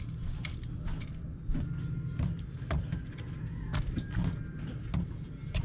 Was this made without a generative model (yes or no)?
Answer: yes